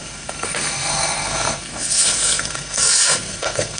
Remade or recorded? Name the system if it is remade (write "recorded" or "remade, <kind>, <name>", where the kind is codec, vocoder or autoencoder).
remade, codec, SNAC